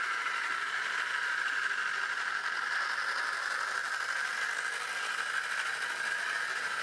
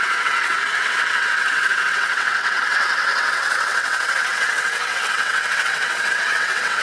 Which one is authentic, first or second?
first